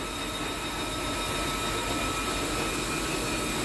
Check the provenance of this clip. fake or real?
real